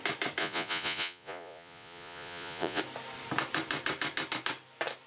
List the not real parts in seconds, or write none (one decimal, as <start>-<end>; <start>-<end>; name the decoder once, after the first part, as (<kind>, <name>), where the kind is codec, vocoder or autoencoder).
0.4-2.8 (vocoder, Vocos)